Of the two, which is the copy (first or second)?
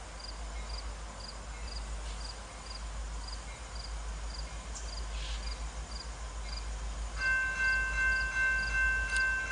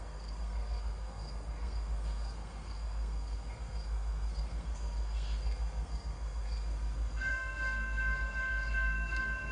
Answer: second